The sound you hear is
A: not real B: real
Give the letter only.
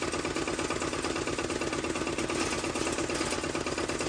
B